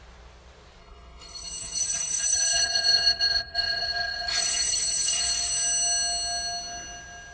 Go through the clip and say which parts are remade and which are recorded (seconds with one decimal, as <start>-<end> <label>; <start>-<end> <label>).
0.0-0.8 recorded; 0.8-5.2 remade; 5.2-7.3 recorded